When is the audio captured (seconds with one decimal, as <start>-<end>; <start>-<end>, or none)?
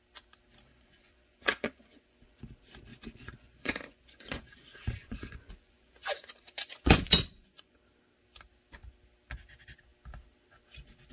0.0-0.7; 2.4-2.9; 7.8-11.1